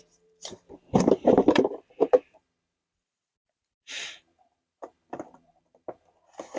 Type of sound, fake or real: fake